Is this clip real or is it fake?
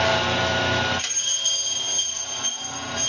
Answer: real